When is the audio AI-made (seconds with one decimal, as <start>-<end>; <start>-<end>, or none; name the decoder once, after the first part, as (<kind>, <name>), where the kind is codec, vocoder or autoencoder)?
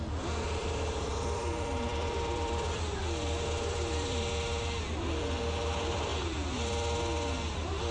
0.6-4.2 (vocoder, BigVGAN v2)